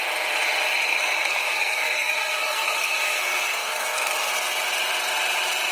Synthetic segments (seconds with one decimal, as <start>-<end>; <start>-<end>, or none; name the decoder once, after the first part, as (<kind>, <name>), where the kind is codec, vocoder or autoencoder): 0.9-4.3 (codec, SNAC)